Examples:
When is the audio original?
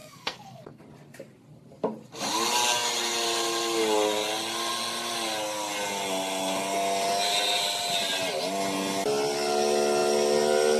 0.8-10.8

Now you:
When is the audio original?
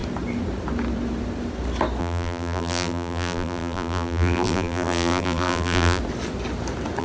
0.0-2.0; 6.0-7.0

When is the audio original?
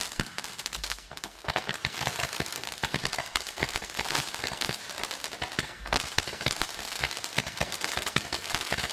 4.8-5.6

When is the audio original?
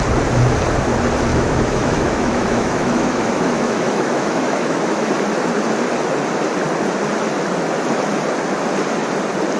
0.0-1.3; 5.1-9.6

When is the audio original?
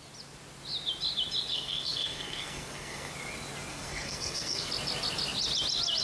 0.0-1.5; 3.1-3.7; 4.7-6.0